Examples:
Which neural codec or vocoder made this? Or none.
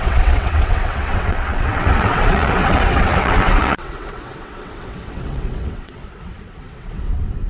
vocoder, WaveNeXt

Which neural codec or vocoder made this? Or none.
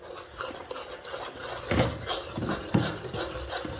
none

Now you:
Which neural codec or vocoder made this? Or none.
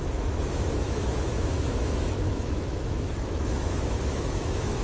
autoencoder, DAC-VAE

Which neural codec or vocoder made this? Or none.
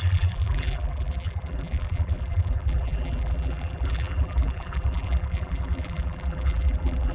vocoder, BigVGAN v2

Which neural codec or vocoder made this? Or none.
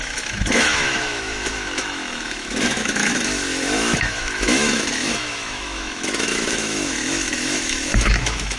autoencoder, DAC-VAE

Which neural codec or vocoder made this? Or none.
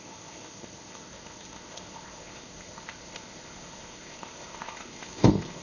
codec, ZipCodec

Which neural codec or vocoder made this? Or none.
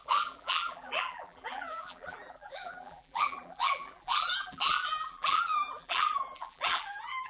vocoder, BigVGAN v2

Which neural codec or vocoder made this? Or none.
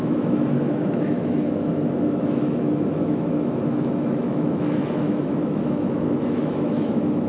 autoencoder, DAC-VAE